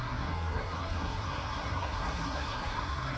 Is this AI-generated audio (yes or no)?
yes